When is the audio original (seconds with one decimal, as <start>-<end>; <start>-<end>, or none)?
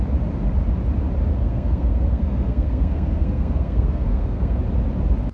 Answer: 0.0-1.4; 4.6-5.3